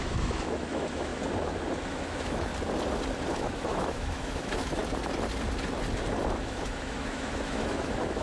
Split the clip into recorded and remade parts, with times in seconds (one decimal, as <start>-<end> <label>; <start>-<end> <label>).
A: 0.0-1.1 remade; 1.1-1.9 recorded; 1.9-2.5 remade; 2.5-3.3 recorded; 3.3-4.8 remade; 4.8-6.4 recorded; 6.4-8.2 remade